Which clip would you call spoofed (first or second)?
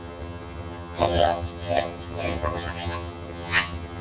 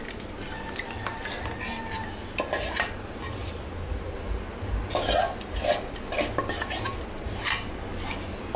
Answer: first